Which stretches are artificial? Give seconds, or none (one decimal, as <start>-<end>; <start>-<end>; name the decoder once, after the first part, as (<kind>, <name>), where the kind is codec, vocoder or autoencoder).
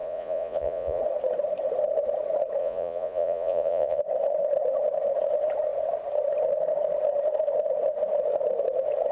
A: 0.0-1.0 (vocoder, Vocos); 2.6-4.0